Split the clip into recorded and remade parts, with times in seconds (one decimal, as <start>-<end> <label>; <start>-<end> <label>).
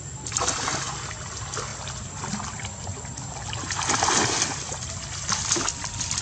0.0-6.2 recorded